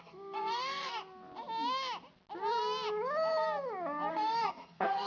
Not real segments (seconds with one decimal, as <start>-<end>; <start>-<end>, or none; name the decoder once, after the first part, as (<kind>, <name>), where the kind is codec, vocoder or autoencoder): 0.0-1.0 (codec, SNAC); 4.1-5.1